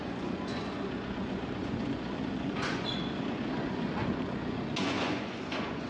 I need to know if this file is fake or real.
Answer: fake